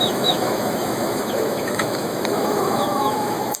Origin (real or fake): fake